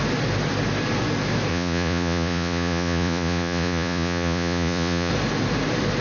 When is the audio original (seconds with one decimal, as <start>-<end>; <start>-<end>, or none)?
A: 0.0-1.5; 5.1-6.0

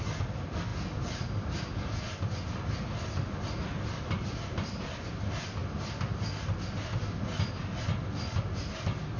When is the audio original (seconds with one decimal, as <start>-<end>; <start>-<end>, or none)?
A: 0.0-9.2

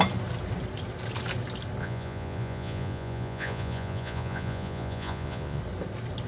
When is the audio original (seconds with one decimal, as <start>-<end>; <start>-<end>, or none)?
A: 0.0-1.8; 5.6-6.3